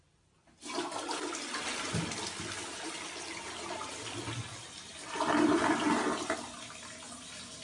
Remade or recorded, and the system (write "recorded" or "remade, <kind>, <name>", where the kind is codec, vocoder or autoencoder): recorded